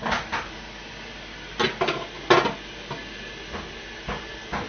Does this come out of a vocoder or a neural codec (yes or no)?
no